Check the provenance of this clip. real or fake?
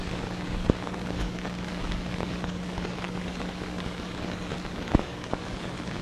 fake